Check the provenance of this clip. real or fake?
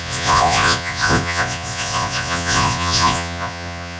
fake